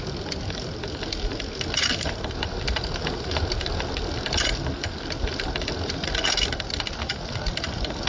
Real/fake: real